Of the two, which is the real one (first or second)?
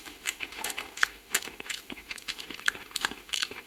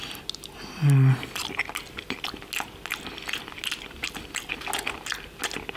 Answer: second